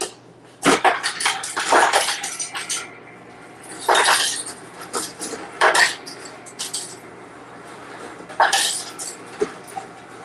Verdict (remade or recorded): recorded